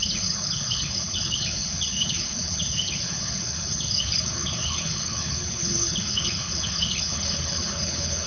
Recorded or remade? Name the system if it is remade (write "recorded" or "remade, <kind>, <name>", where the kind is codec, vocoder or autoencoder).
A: remade, codec, HILCodec